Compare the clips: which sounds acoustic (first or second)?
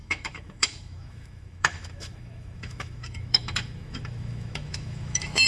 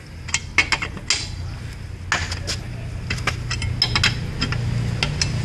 second